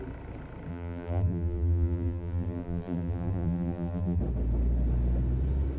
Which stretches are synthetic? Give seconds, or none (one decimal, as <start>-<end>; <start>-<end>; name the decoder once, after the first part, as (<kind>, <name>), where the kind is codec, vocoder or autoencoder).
0.7-4.2 (vocoder, BigVGAN v2)